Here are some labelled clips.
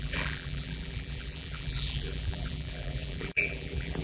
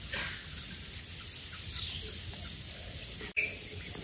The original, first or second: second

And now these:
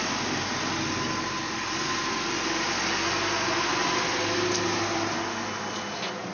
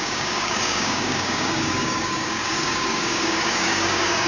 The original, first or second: first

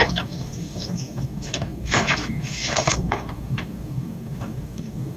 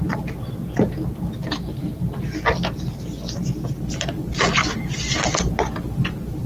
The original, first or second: second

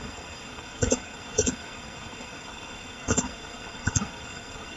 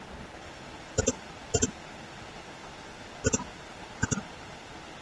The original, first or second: second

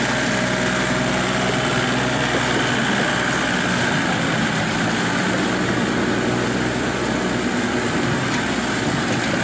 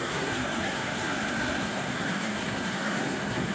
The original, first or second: first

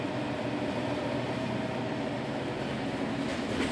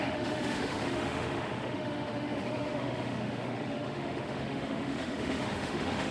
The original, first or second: first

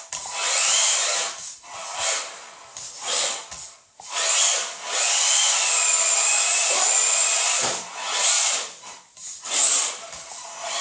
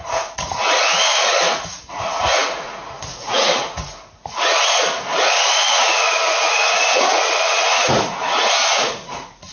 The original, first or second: first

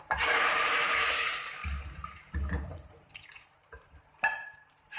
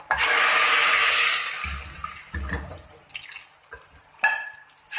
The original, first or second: second